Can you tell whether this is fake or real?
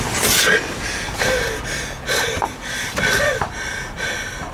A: real